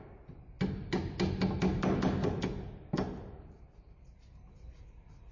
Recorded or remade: recorded